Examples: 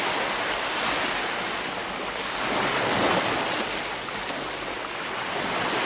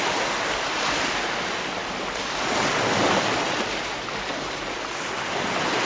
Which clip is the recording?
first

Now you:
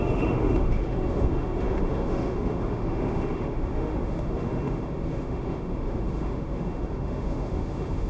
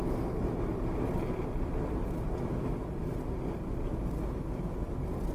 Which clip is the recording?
second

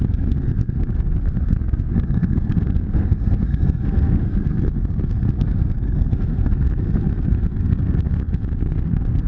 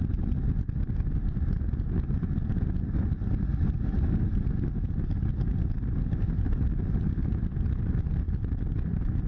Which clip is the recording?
second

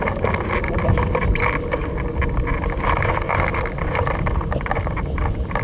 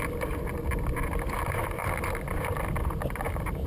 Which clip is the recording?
first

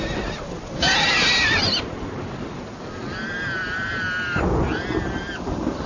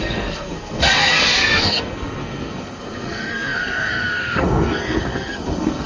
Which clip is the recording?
first